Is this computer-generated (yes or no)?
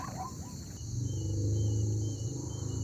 no